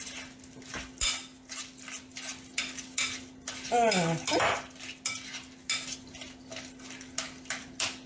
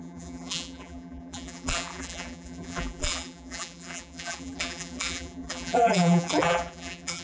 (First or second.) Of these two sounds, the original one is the first